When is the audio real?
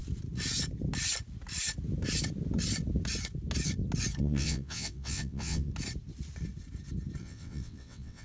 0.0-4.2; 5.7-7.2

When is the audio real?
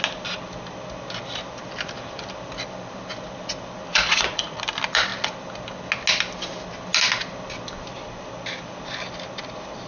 0.0-3.9; 4.6-9.9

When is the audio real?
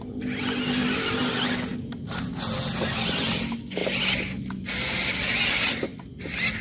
0.0-6.6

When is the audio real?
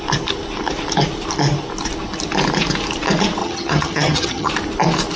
0.0-3.4; 4.5-5.2